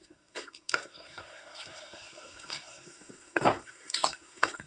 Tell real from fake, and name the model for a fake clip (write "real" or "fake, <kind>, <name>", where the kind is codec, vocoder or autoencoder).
fake, codec, SNAC